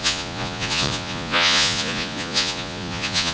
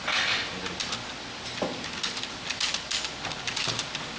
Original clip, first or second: second